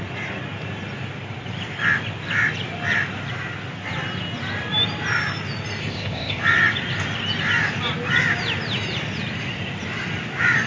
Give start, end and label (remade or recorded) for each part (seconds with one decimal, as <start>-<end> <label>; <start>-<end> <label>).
0.0-5.8 recorded; 5.8-6.4 remade; 6.4-10.7 recorded